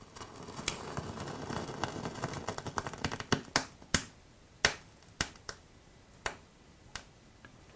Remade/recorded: recorded